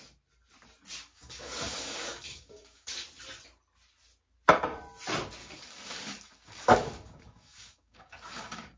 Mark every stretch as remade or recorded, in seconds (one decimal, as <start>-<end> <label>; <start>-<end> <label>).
0.0-1.1 recorded; 1.1-2.9 remade; 2.9-5.4 recorded; 5.4-8.8 remade